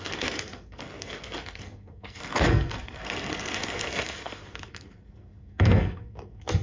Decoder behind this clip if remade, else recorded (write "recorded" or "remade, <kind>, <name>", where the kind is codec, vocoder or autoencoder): remade, codec, SNAC